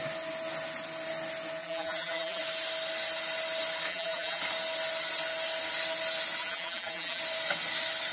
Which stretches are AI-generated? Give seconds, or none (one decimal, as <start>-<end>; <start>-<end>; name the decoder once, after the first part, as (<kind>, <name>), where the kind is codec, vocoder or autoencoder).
1.6-2.4 (vocoder, BigVGAN v2); 3.9-4.4; 6.4-7.2